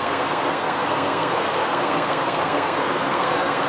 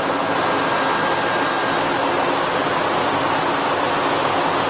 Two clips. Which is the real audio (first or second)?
second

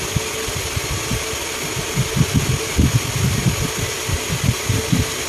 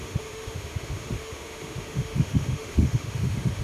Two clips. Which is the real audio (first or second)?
first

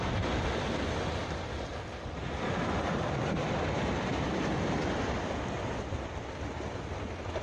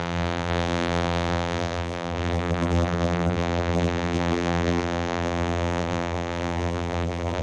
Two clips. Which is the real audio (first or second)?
first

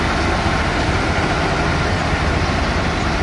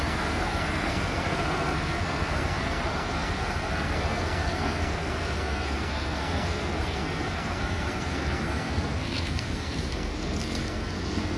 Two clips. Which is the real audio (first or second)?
first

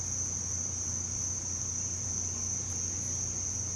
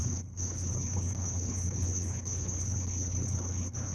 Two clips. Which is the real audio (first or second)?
first